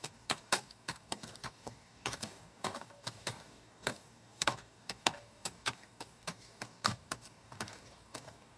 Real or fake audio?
fake